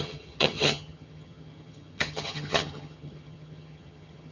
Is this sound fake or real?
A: fake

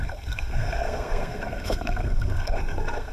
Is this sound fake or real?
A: fake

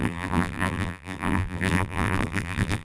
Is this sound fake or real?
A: fake